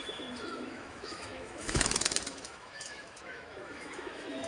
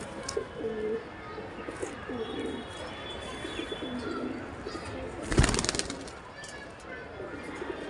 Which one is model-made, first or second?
first